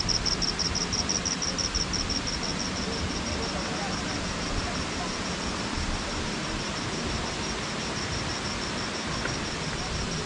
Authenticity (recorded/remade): recorded